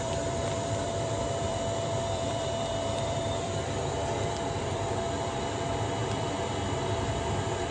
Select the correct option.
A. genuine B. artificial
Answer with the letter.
B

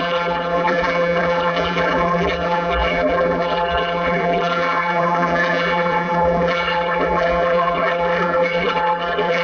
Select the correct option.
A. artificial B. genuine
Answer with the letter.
A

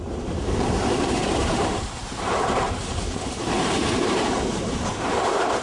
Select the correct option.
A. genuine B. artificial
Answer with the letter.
B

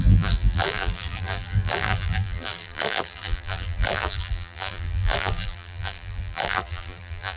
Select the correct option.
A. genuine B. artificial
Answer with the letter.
B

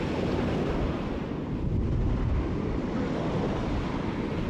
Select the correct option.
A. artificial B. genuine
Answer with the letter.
B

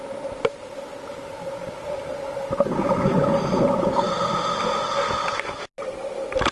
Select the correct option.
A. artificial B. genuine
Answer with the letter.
B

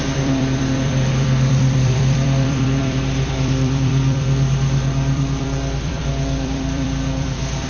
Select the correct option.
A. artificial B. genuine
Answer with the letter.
A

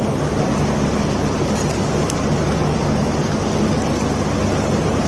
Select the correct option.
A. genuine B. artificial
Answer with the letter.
A